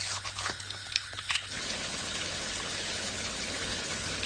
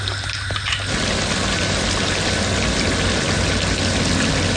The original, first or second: second